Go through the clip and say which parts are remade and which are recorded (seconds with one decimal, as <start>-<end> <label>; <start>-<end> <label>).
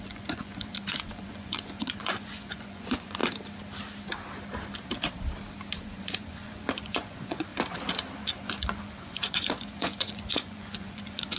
0.0-3.2 remade; 3.2-5.8 recorded; 5.8-7.5 remade; 7.5-8.2 recorded; 8.2-11.4 remade